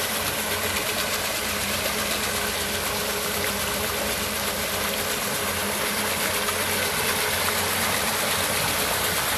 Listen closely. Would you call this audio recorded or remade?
recorded